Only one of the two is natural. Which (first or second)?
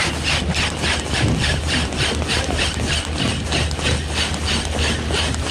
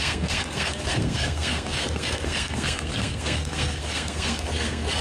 first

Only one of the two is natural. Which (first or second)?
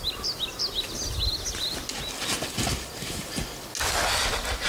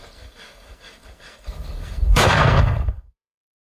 first